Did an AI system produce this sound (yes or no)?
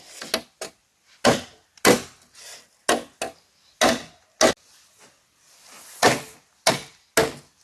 no